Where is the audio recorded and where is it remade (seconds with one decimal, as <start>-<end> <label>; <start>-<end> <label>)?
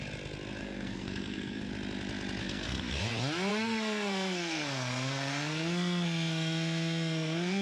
0.0-0.6 recorded; 0.6-1.7 remade; 1.7-2.4 recorded; 2.4-3.0 remade; 3.0-3.5 recorded; 3.5-7.6 remade